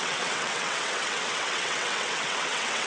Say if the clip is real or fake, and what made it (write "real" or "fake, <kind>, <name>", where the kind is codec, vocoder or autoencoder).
fake, vocoder, WaveNeXt